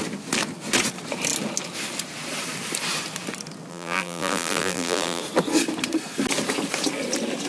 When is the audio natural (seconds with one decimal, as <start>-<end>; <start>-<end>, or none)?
0.0-3.7; 5.2-7.5

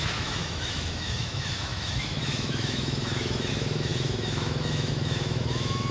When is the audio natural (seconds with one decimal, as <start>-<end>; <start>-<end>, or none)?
none

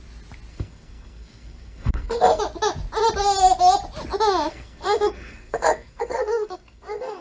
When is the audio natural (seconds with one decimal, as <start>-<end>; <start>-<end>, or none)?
0.0-0.5; 2.4-4.5

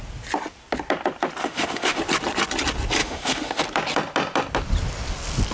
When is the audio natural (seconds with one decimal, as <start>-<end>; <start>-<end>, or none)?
0.0-1.4; 2.0-3.0; 3.6-5.5

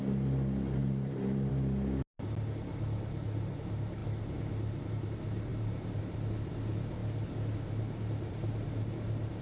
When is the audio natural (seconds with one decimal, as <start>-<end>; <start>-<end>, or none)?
0.0-0.8; 1.5-5.5; 6.0-9.4

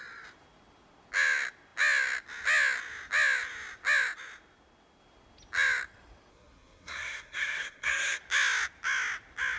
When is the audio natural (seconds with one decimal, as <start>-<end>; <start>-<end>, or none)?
0.0-6.3; 8.2-9.6

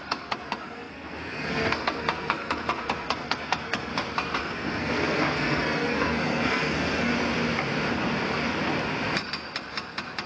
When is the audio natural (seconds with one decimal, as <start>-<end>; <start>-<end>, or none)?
3.9-4.4; 7.1-10.3